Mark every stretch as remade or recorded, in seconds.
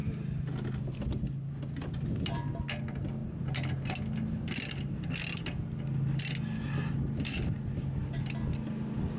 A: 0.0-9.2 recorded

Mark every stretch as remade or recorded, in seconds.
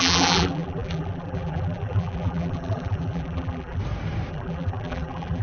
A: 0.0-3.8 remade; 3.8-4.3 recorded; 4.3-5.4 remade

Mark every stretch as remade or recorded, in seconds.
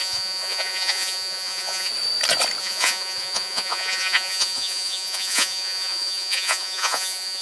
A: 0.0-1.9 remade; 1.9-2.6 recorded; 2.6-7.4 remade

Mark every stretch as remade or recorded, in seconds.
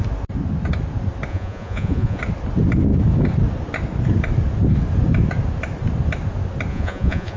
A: 0.0-1.3 recorded; 1.3-2.2 remade; 2.2-6.7 recorded; 6.7-7.4 remade